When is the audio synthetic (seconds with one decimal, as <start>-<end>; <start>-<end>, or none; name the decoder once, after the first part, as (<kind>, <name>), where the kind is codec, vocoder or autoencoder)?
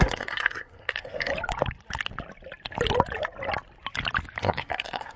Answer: 0.0-1.3 (codec, SNAC); 4.4-5.2